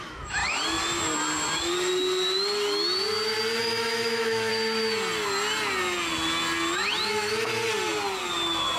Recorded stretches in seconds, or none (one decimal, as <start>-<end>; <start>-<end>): 0.4-3.6; 4.5-7.1; 7.5-8.8